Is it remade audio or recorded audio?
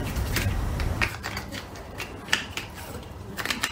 remade